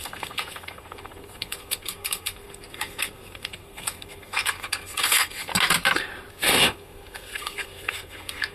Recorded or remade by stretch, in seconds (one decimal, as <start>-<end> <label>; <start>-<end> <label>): 0.0-5.5 remade; 5.5-6.3 recorded; 6.3-8.5 remade